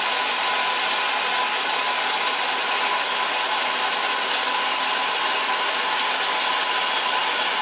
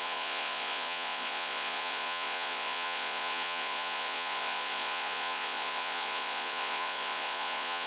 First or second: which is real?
first